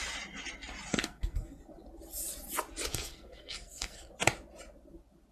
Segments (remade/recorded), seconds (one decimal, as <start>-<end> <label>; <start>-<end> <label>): 0.0-0.9 recorded; 0.9-1.6 remade; 1.6-2.9 recorded; 2.9-4.1 remade; 4.1-5.3 recorded